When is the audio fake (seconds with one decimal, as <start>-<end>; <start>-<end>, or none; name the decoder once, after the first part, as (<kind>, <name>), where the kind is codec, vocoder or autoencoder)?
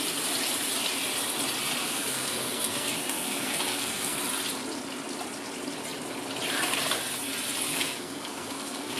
1.8-4.2 (codec, SNAC); 7.7-9.0